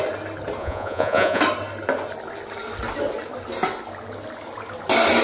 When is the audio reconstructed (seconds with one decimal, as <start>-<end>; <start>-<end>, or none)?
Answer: 0.6-1.4